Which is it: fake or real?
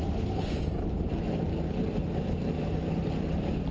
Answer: fake